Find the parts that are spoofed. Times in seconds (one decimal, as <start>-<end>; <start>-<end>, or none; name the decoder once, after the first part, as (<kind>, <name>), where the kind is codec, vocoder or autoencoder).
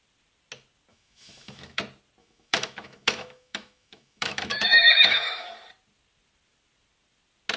0.9-1.8 (autoencoder, DAC-VAE); 2.2-5.5